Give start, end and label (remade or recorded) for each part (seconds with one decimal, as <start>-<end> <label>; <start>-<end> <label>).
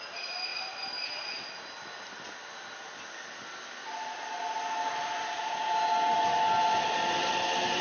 0.0-7.8 recorded